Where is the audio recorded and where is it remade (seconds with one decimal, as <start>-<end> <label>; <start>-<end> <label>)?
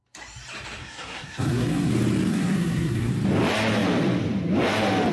0.0-0.8 recorded; 0.8-1.9 remade; 1.9-2.3 recorded; 2.3-3.1 remade; 3.1-5.1 recorded